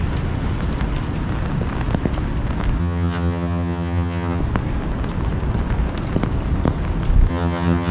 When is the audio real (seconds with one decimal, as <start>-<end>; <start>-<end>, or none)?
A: 0.0-2.8; 4.4-7.3